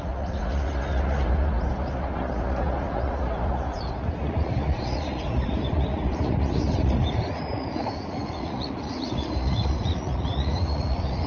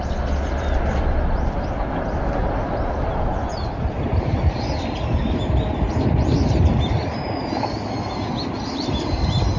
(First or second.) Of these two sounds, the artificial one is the first